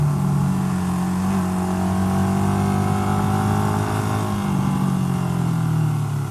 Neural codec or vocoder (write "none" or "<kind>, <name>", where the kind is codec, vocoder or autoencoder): none